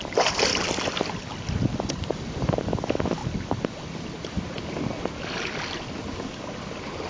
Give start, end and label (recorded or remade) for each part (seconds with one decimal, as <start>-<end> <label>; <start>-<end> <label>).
0.0-7.1 recorded